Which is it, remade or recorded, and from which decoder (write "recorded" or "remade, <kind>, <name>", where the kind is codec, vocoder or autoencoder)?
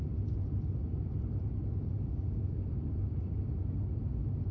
recorded